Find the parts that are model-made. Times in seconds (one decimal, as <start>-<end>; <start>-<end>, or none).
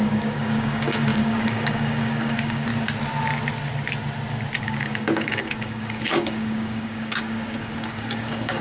0.0-2.7; 4.6-8.6